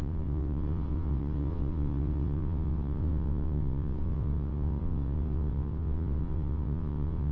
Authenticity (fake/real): fake